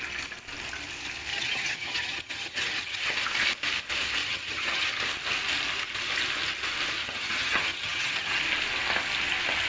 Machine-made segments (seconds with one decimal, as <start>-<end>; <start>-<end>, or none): 1.3-3.1; 4.2-4.9; 7.0-8.4